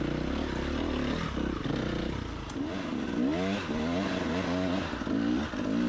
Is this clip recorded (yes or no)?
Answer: yes